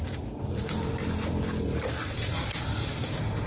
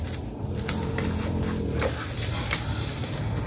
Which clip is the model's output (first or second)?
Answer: first